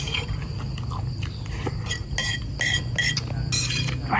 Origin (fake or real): real